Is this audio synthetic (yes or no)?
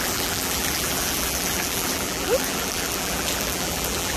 yes